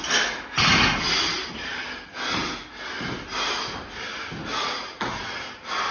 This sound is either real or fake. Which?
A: real